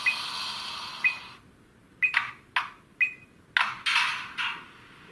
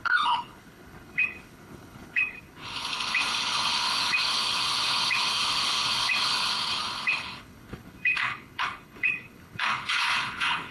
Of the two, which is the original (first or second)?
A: first